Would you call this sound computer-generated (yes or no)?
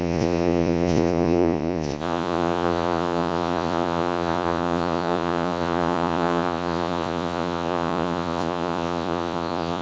yes